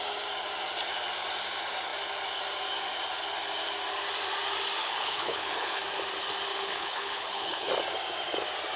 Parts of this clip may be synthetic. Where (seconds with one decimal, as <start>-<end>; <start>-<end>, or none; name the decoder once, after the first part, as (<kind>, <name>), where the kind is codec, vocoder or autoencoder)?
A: 4.8-5.8 (codec, HILCodec); 6.5-7.7